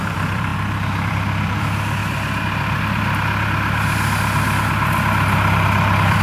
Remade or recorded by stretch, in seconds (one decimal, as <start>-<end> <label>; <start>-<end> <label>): 0.0-0.5 remade; 0.5-1.1 recorded; 1.1-2.0 remade; 2.0-5.7 recorded; 5.7-6.2 remade